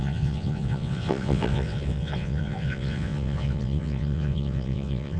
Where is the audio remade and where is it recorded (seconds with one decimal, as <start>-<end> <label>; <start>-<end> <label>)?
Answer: 0.0-5.2 remade